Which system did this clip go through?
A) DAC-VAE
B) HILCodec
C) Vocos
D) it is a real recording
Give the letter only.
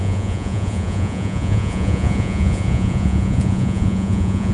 C